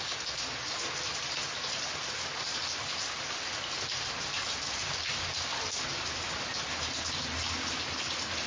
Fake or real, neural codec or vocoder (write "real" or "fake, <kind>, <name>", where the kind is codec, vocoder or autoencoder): real